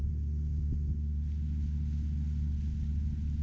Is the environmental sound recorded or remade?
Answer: recorded